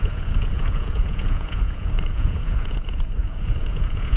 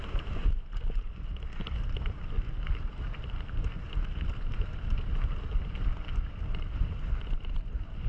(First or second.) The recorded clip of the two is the second